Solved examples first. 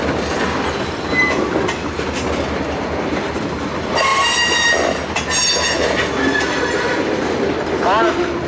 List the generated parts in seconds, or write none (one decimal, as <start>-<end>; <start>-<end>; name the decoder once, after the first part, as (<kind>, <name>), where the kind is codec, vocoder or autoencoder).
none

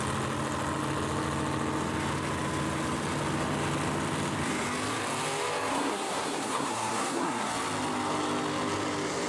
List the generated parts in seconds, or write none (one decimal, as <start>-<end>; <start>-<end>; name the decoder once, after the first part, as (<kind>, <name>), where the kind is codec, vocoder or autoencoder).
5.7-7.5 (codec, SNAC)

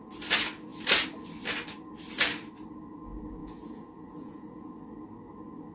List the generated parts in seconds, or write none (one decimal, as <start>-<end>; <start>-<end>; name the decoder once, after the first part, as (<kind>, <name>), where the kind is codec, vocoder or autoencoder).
3.4-4.7 (vocoder, Vocos)

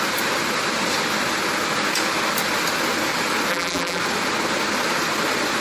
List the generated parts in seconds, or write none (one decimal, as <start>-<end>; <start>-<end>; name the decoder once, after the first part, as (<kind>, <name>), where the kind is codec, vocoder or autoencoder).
3.5-4.0 (vocoder, BigVGAN v2)